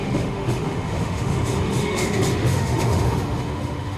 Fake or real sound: fake